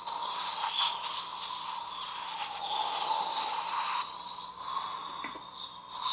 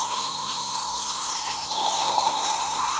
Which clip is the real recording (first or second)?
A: first